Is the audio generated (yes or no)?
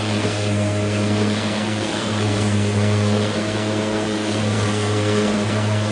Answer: yes